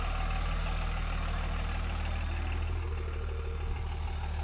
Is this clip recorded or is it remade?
recorded